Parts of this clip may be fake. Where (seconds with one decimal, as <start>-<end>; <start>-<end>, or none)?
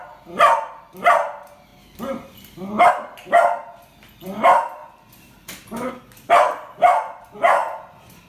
1.7-2.9; 7.6-8.3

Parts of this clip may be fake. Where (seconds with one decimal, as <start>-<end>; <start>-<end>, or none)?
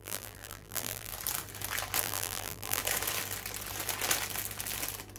0.0-1.1; 2.0-2.8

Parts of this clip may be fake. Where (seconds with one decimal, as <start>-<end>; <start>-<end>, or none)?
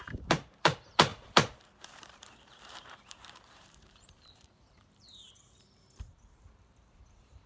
0.0-7.5